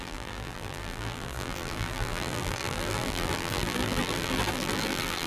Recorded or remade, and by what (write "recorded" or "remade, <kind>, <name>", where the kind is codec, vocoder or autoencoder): remade, vocoder, BigVGAN v2